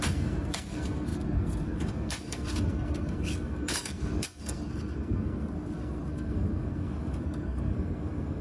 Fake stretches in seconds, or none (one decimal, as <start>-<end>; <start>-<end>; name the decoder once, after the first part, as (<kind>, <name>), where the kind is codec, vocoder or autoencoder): 0.0-8.4 (codec, SNAC)